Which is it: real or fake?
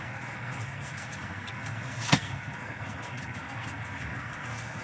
fake